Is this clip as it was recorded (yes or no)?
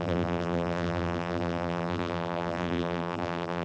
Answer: no